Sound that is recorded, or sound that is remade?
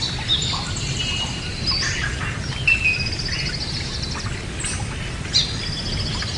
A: recorded